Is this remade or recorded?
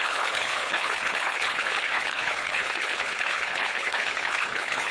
remade